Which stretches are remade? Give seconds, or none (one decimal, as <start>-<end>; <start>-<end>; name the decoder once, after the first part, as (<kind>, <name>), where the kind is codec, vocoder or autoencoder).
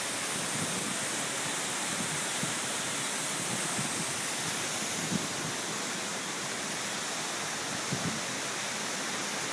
6.1-6.7 (vocoder, BigVGAN v2)